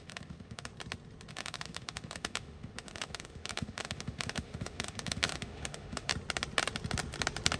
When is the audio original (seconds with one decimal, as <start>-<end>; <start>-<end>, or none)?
0.7-1.3; 6.1-7.6